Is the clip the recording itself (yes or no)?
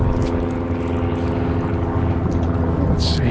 yes